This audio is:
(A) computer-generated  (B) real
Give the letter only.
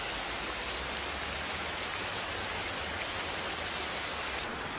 B